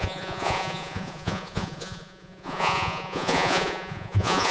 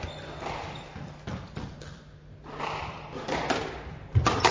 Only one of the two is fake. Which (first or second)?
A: first